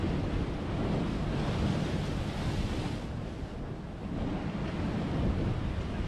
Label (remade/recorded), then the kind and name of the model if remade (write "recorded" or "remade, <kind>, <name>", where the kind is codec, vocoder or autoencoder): recorded